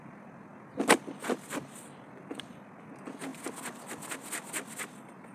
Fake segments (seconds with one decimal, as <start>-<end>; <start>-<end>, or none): none

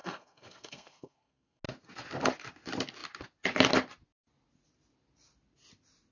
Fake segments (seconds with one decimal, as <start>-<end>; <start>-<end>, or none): 0.0-1.6

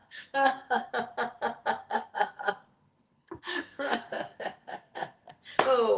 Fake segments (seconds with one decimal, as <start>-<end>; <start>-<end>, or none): 0.0-0.9; 1.8-5.4

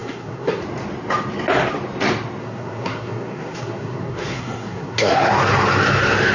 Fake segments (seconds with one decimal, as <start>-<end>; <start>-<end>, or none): 0.0-0.6; 2.4-5.3

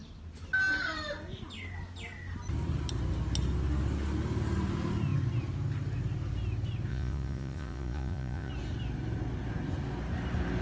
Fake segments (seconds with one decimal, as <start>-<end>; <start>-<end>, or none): 6.9-8.5

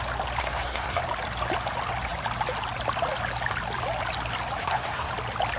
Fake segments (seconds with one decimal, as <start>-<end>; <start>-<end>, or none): 0.4-1.0; 4.6-5.1

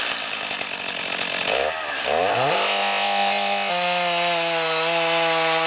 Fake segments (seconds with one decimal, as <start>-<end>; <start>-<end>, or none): 2.3-3.7

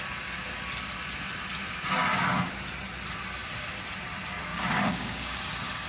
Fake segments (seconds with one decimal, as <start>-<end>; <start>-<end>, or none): 4.5-5.4